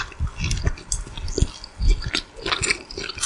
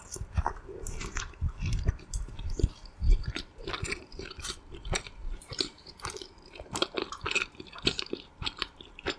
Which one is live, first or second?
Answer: first